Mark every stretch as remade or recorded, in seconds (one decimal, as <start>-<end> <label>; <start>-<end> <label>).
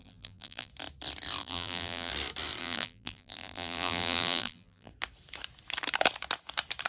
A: 0.0-0.7 remade; 0.7-1.4 recorded; 1.4-2.1 remade; 2.1-2.6 recorded; 2.6-4.9 remade; 4.9-6.9 recorded